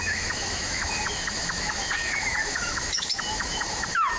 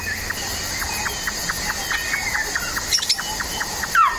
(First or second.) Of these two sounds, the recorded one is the second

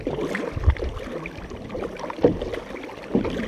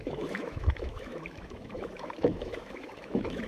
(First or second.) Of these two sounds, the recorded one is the first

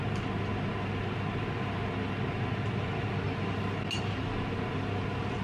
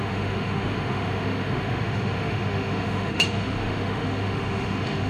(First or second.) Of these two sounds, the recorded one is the first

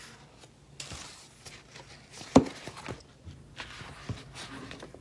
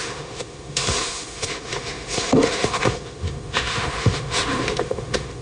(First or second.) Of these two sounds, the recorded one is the first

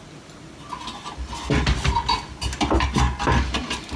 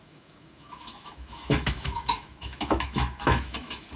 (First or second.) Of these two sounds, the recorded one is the first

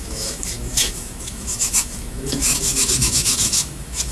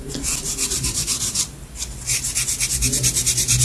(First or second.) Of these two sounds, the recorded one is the second